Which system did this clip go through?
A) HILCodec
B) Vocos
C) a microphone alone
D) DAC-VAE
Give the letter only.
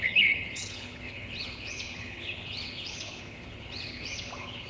A